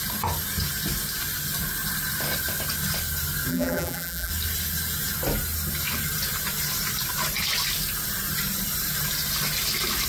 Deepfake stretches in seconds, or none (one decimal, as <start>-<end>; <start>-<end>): 3.5-4.3